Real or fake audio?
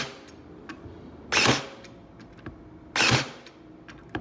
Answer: real